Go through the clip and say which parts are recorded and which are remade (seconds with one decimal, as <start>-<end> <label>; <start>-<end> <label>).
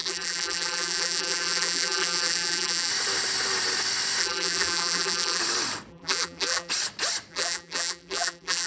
0.0-2.9 remade; 2.9-4.2 recorded; 4.2-5.4 remade; 5.4-5.9 recorded; 5.9-6.7 remade; 6.7-7.3 recorded; 7.3-8.7 remade